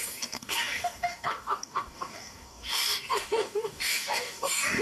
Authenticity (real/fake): fake